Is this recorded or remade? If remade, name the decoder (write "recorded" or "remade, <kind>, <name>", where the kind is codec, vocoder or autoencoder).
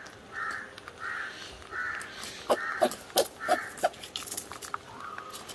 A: recorded